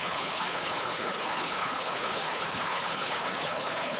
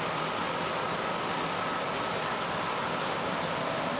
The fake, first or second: first